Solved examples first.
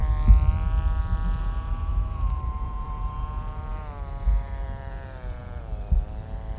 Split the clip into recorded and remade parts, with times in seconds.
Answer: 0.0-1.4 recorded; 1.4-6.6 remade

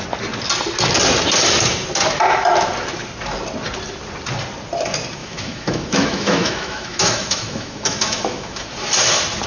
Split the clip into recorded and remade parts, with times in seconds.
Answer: 0.0-5.2 recorded; 5.2-8.7 remade; 8.7-9.5 recorded

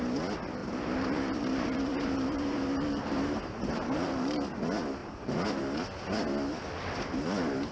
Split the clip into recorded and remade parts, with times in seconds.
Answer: 0.0-0.6 recorded; 0.6-4.5 remade; 4.5-5.0 recorded; 5.0-5.6 remade; 5.6-7.7 recorded

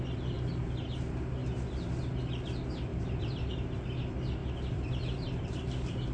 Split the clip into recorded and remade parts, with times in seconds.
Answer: 0.0-2.9 recorded; 2.9-3.5 remade; 3.5-4.4 recorded; 4.4-5.5 remade; 5.5-6.1 recorded